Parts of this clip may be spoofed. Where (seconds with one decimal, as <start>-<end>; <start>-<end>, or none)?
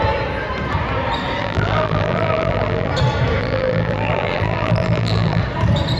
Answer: 1.4-2.9; 3.4-5.4